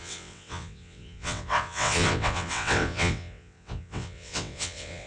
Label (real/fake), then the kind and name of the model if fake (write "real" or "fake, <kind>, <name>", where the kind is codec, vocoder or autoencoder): fake, vocoder, WaveNeXt